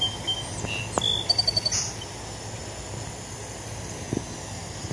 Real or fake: real